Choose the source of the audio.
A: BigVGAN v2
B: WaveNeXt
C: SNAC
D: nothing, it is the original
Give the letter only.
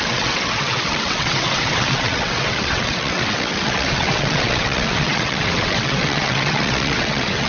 B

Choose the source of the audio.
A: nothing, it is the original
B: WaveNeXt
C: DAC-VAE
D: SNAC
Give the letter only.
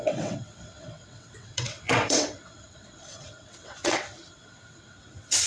B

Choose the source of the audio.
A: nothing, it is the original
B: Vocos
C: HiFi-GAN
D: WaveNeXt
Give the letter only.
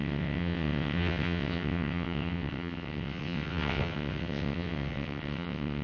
D